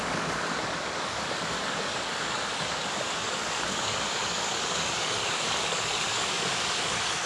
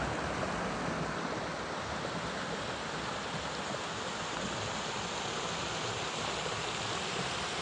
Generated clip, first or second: first